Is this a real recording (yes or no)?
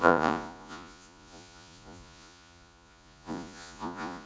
no